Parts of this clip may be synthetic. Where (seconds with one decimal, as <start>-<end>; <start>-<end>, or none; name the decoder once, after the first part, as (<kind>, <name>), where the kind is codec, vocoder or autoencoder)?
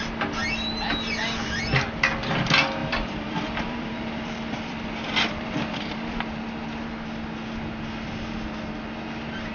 2.8-6.3 (vocoder, BigVGAN v2)